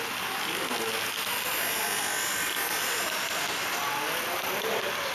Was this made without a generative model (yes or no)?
yes